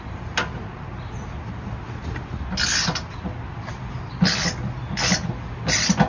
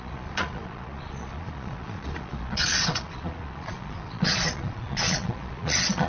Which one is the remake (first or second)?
second